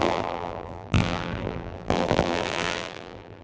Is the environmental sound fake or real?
fake